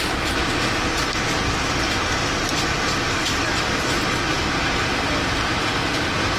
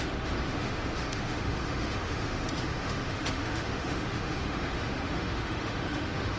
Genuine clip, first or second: first